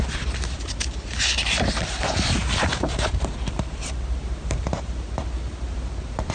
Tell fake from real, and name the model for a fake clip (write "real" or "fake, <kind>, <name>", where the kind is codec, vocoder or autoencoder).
fake, vocoder, BigVGAN v2